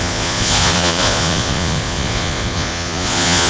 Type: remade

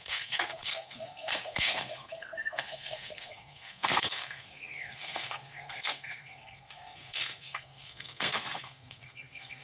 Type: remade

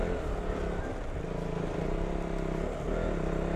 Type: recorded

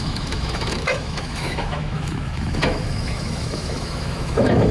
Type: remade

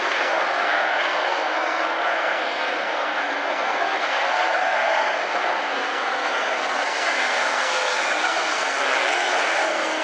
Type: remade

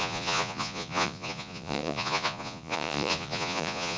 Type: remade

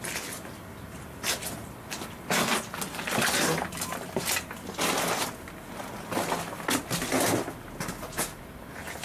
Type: recorded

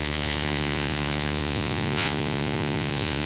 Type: remade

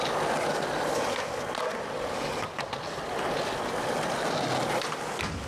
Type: recorded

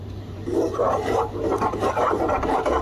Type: remade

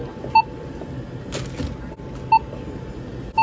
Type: recorded